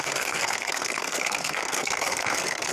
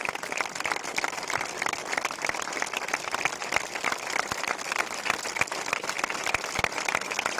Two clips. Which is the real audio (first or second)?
second